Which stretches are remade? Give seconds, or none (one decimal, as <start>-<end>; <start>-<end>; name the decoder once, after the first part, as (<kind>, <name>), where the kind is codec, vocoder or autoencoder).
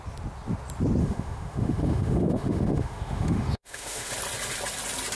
1.0-4.1 (autoencoder, DAC-VAE)